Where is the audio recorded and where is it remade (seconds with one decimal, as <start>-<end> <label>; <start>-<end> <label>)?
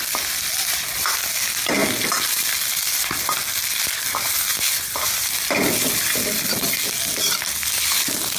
0.0-8.4 recorded